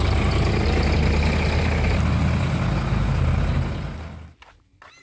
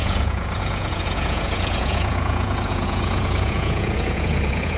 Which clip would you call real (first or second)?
first